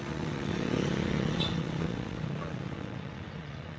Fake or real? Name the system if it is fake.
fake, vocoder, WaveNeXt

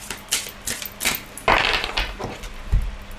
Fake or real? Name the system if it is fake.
real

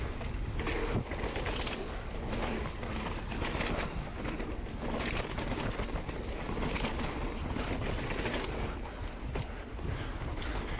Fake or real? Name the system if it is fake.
real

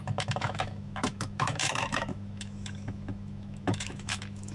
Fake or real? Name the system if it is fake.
fake, autoencoder, DAC-VAE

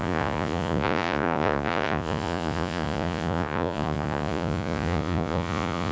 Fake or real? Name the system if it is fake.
fake, vocoder, Vocos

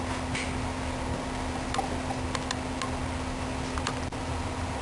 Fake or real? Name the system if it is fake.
real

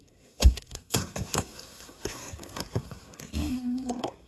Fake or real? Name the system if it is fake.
fake, codec, SNAC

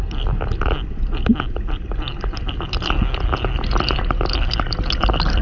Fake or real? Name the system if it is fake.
real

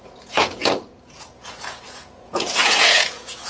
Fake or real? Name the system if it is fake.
fake, vocoder, Vocos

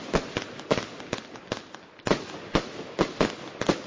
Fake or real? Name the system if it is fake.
real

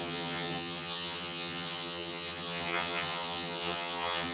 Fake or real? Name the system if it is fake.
fake, vocoder, HiFi-GAN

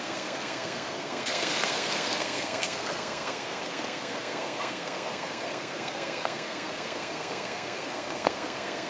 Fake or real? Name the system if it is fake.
fake, codec, SNAC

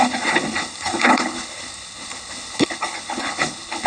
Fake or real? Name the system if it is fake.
fake, codec, HILCodec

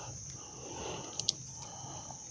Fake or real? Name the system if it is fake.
real